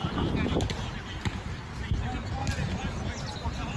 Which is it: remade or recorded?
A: recorded